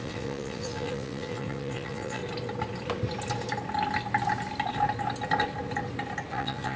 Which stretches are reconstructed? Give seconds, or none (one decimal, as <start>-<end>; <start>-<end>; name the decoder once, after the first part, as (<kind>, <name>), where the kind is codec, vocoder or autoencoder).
0.0-2.2 (vocoder, WaveNeXt); 6.3-6.8